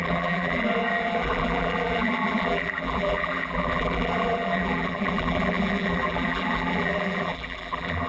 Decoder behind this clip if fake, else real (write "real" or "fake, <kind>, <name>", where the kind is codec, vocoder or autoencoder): fake, vocoder, BigVGAN v2